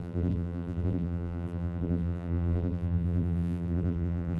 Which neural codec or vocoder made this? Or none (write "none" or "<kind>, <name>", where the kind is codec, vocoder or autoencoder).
vocoder, BigVGAN v2